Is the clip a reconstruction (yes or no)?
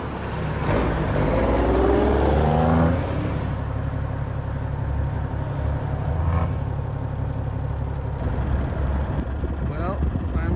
no